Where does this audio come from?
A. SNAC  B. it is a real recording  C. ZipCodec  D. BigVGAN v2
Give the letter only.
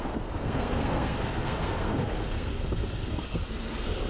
A